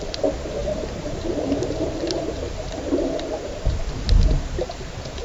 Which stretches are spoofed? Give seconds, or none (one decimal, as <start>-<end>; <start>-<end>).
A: 0.6-3.7

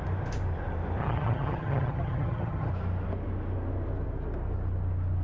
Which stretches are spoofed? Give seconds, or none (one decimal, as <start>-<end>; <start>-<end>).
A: 1.0-2.7